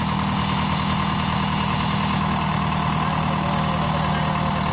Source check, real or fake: real